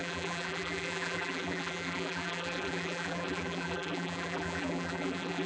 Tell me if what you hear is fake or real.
fake